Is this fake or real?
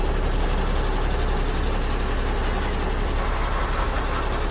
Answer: real